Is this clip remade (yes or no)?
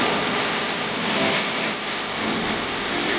no